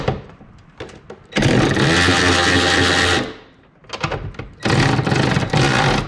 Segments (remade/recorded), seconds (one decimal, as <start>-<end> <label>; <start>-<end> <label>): 0.0-6.1 recorded